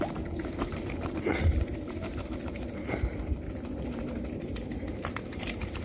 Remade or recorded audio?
remade